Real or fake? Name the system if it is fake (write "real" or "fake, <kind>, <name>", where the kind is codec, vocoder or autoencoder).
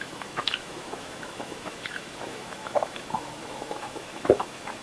fake, autoencoder, DAC-VAE